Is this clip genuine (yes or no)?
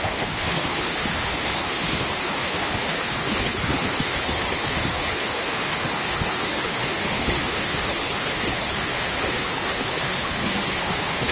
no